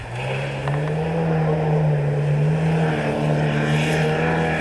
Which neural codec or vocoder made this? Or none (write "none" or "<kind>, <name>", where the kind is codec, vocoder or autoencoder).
none